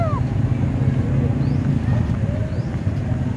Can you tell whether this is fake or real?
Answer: real